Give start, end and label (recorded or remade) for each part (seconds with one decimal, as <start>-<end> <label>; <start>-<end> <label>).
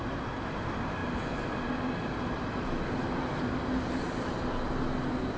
0.0-5.4 recorded